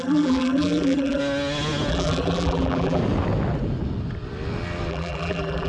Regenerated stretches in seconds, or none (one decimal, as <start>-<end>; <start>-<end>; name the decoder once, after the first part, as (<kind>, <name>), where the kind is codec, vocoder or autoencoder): 0.0-1.2 (vocoder, BigVGAN v2); 1.9-3.0; 4.9-5.7